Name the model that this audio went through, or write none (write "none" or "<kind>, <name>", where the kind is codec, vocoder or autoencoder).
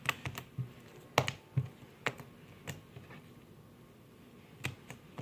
none